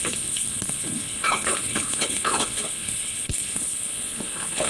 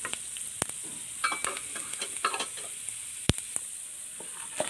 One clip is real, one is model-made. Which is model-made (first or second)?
first